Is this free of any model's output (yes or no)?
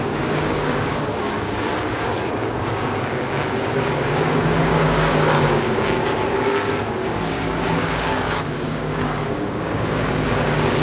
no